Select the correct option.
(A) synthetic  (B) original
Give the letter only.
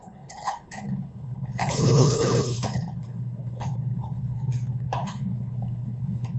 A